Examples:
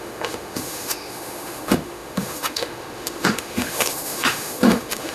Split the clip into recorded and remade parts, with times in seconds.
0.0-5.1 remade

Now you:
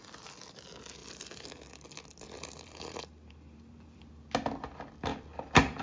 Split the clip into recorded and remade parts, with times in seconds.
0.0-1.0 recorded; 1.0-4.0 remade; 4.0-5.1 recorded; 5.1-5.8 remade

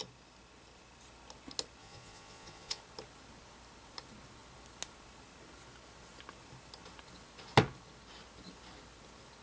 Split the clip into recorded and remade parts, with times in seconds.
0.0-1.8 recorded; 1.8-2.8 remade; 2.8-9.4 recorded

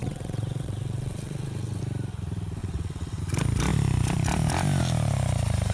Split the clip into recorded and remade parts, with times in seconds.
0.0-1.8 remade; 1.8-2.6 recorded; 2.6-3.2 remade; 3.2-5.7 recorded

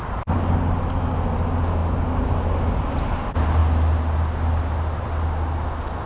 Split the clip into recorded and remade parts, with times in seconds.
0.0-6.1 recorded

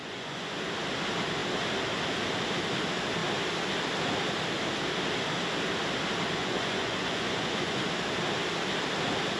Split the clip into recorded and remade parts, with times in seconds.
0.0-0.6 remade; 0.6-6.4 recorded; 6.4-7.8 remade; 7.8-9.4 recorded